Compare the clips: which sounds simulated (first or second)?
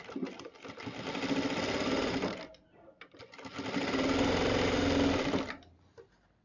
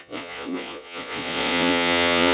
second